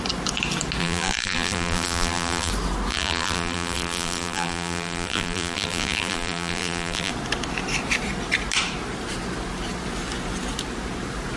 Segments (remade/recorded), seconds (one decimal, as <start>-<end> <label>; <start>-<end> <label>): 0.0-0.8 recorded; 0.8-2.5 remade; 2.5-2.9 recorded; 2.9-7.1 remade; 7.1-11.4 recorded